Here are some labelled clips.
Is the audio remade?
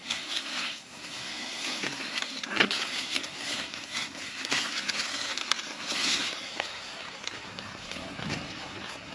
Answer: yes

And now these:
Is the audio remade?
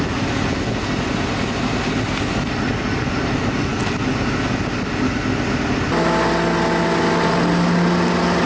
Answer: no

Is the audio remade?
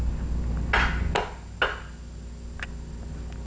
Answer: no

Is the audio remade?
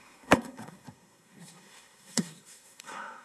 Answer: yes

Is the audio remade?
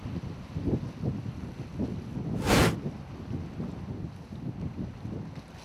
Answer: no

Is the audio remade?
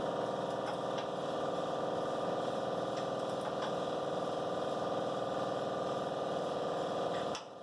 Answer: no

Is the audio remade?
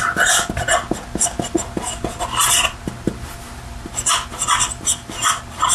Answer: no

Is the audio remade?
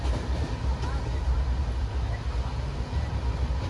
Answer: no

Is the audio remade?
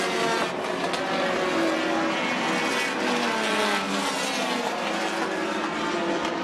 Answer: no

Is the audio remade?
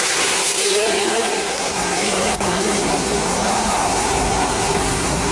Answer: yes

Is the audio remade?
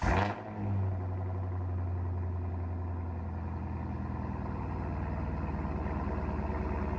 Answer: no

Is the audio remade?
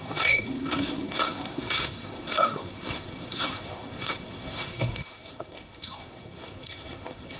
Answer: yes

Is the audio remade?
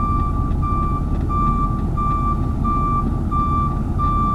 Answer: no